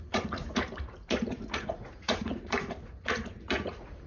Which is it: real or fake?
fake